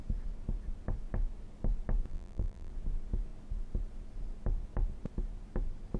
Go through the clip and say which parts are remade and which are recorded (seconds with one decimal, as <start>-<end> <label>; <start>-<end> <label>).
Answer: 0.0-2.1 recorded; 2.1-2.7 remade; 2.7-6.0 recorded